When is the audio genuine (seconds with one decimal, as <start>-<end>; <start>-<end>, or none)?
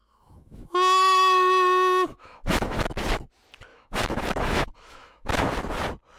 2.9-3.7; 5.5-6.2